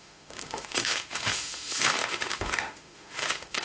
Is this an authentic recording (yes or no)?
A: no